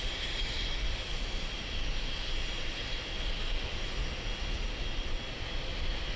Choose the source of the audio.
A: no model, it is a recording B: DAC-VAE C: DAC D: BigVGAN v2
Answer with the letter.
A